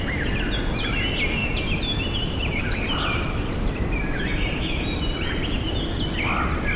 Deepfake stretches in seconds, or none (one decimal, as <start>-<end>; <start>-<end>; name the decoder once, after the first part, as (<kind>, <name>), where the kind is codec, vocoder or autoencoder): 1.4-5.5 (vocoder, BigVGAN v2)